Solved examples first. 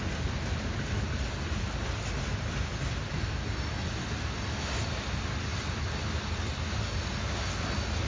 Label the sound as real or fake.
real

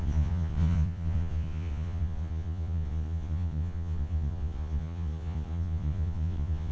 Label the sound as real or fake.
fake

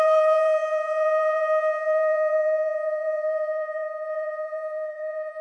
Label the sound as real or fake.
fake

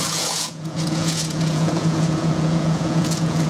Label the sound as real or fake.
fake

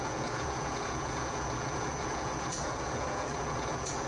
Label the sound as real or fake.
fake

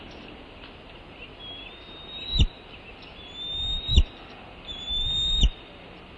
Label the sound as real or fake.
real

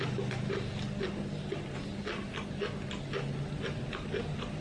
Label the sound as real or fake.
real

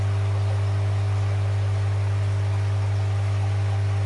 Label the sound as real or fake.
real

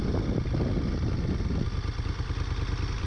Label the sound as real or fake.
real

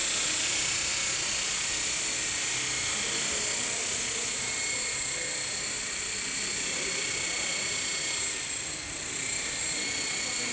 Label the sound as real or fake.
real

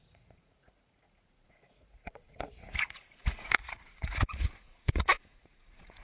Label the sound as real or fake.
fake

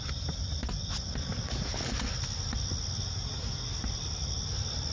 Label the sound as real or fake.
real